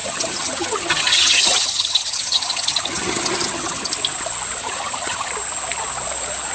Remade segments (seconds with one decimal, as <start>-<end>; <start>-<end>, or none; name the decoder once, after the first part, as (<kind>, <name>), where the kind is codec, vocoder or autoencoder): 0.0-3.9 (vocoder, HiFi-GAN); 4.6-5.3